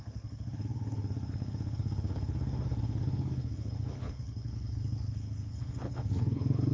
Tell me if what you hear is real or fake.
fake